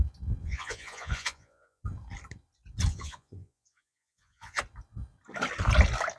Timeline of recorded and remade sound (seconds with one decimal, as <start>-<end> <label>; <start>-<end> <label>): 0.0-0.4 recorded; 0.4-1.8 remade; 1.8-2.9 recorded; 2.9-4.6 remade; 4.6-6.2 recorded